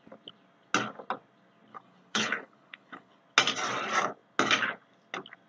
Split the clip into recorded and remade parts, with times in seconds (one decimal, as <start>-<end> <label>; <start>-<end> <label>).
0.0-1.7 recorded; 1.7-3.2 remade; 3.2-5.5 recorded